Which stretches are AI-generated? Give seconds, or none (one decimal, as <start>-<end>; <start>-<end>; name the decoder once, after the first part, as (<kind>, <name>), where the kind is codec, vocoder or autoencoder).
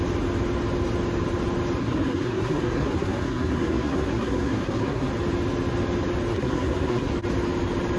1.8-5.1 (codec, SNAC); 6.3-7.1